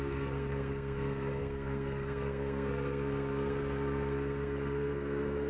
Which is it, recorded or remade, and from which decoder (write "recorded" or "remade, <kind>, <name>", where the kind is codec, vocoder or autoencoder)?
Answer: remade, codec, SNAC